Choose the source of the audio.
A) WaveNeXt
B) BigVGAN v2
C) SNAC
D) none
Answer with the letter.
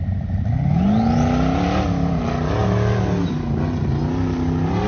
D